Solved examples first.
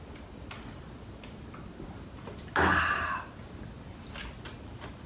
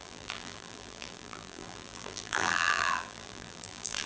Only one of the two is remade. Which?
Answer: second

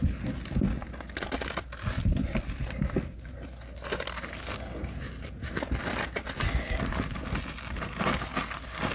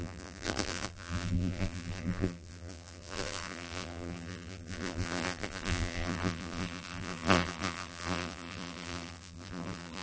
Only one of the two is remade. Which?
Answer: second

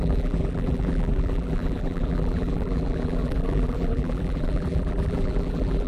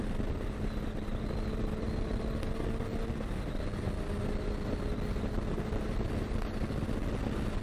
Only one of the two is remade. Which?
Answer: first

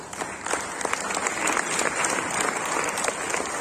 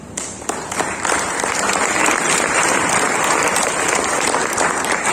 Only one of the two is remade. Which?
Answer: second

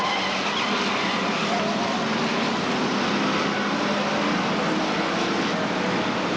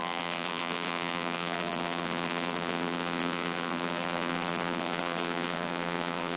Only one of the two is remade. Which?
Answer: second